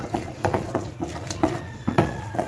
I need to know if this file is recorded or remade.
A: remade